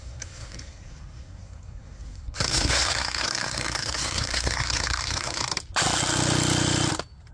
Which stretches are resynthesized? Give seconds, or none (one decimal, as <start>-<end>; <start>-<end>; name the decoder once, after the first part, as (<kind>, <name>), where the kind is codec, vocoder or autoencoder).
0.0-5.5 (codec, SNAC)